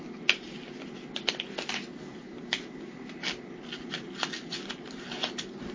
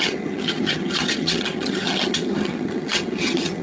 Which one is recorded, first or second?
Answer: first